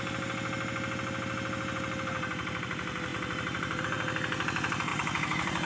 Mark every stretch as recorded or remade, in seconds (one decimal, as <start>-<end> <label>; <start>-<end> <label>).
0.0-3.1 recorded; 3.1-3.8 remade; 3.8-4.9 recorded; 4.9-5.7 remade